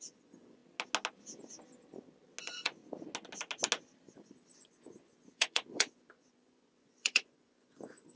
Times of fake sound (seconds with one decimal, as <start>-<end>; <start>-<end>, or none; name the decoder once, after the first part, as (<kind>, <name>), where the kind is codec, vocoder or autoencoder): 0.0-0.6 (vocoder, Vocos); 2.4-2.8; 4.2-8.2